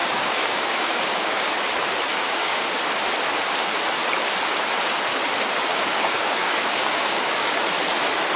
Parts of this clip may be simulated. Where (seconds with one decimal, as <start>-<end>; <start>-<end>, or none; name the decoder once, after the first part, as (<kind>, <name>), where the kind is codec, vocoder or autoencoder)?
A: 0.0-1.5 (codec, DAC); 2.1-2.8; 5.7-7.6